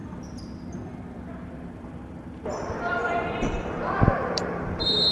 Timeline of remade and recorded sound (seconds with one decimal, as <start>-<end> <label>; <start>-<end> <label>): 0.0-1.3 recorded; 1.3-5.1 remade